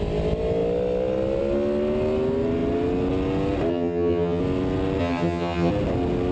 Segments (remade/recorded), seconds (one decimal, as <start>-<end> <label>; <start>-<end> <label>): 0.0-3.7 recorded; 3.7-4.4 remade; 4.4-5.0 recorded; 5.0-5.7 remade; 5.7-6.3 recorded

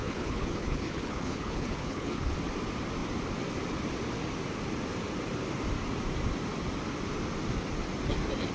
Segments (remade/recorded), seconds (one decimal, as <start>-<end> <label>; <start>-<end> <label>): 0.0-2.3 remade; 2.3-8.5 recorded

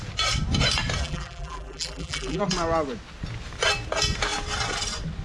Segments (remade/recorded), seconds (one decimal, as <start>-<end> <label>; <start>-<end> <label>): 0.0-1.0 recorded; 1.0-2.4 remade; 2.4-5.2 recorded

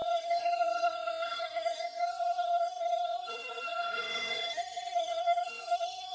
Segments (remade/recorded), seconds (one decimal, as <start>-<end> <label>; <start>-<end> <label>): 0.0-6.1 remade

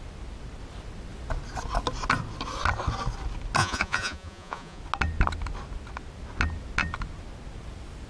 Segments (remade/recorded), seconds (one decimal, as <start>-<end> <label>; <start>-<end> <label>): 0.0-3.6 recorded; 3.6-4.8 remade; 4.8-8.1 recorded

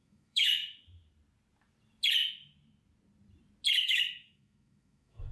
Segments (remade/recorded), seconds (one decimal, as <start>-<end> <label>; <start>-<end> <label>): 0.0-0.6 remade; 0.6-3.8 recorded; 3.8-5.3 remade

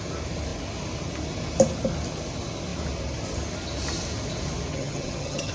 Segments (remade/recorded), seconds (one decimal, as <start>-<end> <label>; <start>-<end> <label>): 0.0-4.7 recorded; 4.7-5.5 remade

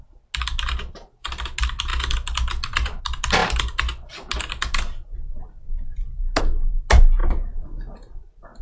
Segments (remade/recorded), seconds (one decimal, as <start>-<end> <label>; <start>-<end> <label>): 0.0-8.6 recorded